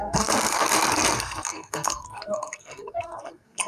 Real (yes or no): no